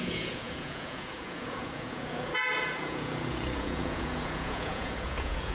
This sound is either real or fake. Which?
fake